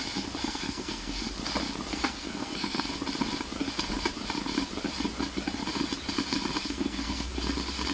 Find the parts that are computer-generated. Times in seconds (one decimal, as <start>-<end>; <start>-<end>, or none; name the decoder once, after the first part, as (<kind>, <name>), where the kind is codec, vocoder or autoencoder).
0.4-1.3 (codec, SNAC); 1.9-2.9; 6.6-7.3